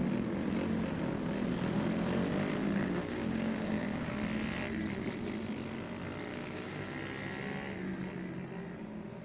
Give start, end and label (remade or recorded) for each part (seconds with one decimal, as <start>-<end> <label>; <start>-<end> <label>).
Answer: 0.0-2.8 recorded; 2.8-4.1 remade; 4.1-6.3 recorded; 6.3-6.9 remade; 6.9-9.2 recorded